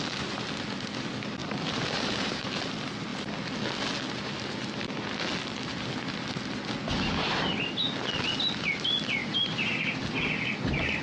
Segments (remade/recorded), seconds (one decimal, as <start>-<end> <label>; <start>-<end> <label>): 0.0-1.4 recorded; 1.4-2.6 remade; 2.6-9.2 recorded; 9.2-9.7 remade; 9.7-11.0 recorded